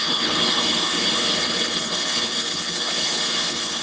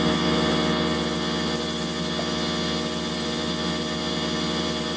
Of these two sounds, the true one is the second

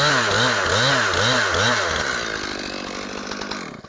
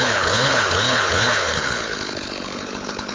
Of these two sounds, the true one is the first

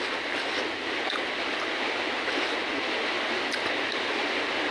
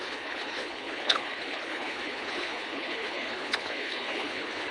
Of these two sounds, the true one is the first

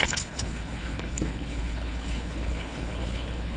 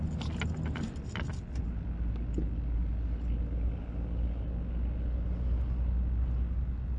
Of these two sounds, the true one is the second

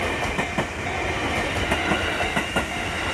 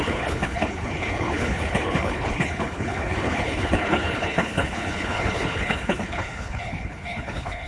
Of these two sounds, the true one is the first